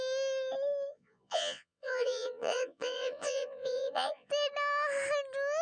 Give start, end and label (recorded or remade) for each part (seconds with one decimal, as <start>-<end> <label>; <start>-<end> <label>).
0.0-0.9 recorded; 0.9-4.3 remade; 4.3-5.6 recorded